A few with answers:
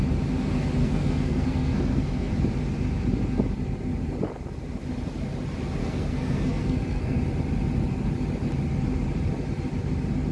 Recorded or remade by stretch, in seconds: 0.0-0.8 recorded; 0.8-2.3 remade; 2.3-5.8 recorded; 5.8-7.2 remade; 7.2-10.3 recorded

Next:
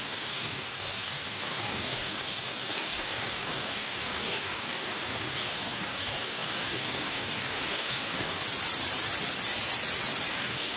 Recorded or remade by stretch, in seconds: 0.0-8.4 remade; 8.4-10.3 recorded; 10.3-10.8 remade

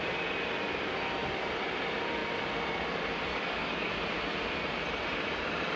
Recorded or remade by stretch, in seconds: 0.0-3.3 recorded; 3.3-3.9 remade; 3.9-5.8 recorded

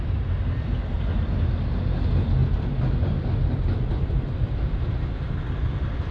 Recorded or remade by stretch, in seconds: 0.0-6.1 recorded